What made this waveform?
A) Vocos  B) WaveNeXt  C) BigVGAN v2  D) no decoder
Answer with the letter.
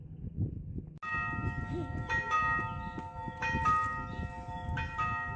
D